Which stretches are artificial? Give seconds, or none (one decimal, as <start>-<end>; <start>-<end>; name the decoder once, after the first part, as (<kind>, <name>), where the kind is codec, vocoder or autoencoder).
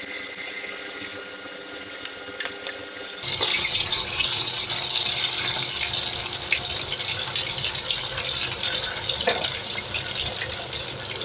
3.5-4.7 (vocoder, WaveNeXt)